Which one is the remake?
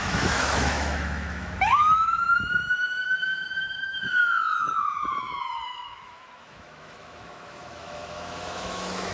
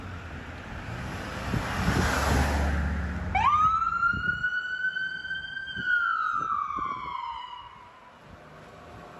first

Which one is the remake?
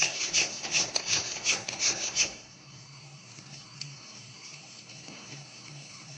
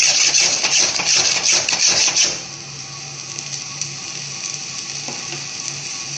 first